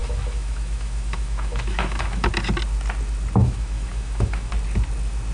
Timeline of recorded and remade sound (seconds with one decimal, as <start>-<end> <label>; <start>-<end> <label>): 0.0-2.3 remade; 2.3-3.4 recorded; 3.4-4.5 remade; 4.5-5.3 recorded